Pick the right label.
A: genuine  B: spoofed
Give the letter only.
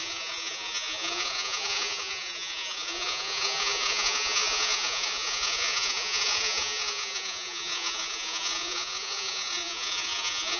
B